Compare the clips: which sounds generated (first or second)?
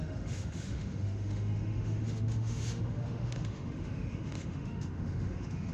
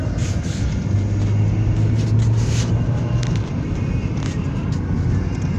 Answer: first